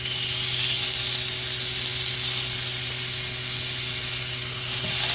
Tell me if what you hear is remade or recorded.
recorded